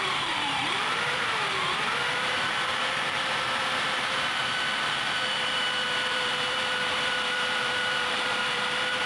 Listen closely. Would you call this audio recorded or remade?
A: remade